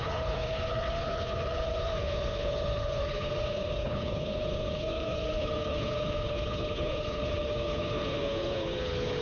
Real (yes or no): no